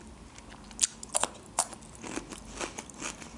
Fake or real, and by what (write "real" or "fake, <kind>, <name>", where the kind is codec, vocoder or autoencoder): real